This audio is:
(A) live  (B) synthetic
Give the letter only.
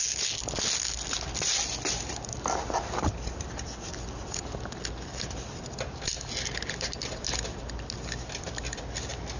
A